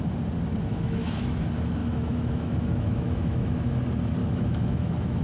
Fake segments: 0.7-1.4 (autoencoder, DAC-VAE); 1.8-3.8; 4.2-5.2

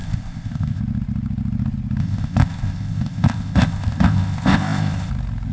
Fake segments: 0.0-0.8 (codec, ZipCodec); 2.0-5.1

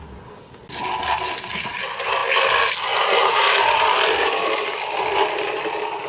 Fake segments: none